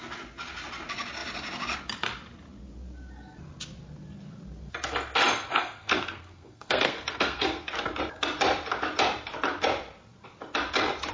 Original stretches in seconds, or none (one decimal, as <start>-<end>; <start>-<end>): 0.0-5.5; 7.7-11.1